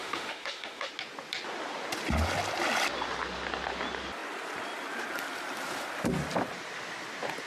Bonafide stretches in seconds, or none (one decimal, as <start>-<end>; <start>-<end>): 0.9-7.5